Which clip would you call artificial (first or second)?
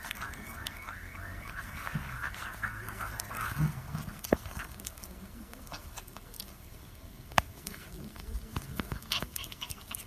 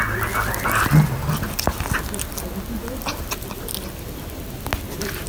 first